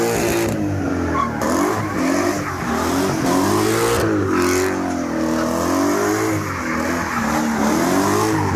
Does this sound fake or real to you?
real